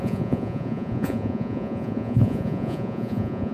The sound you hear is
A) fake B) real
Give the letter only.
A